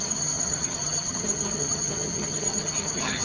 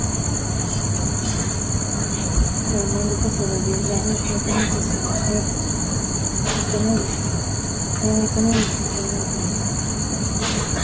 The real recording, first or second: second